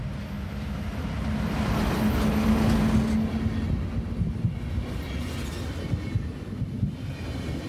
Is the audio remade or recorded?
recorded